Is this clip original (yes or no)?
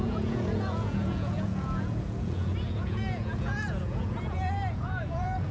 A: no